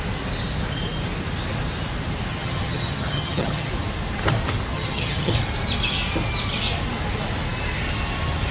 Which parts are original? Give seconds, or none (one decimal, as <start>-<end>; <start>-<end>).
0.0-2.3; 3.7-4.7; 5.3-8.5